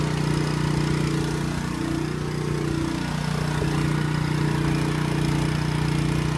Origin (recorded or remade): recorded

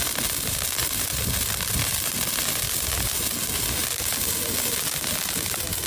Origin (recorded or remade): recorded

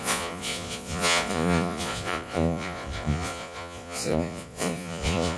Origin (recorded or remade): remade